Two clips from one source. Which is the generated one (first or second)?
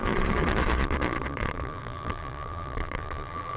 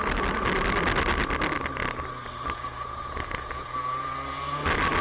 first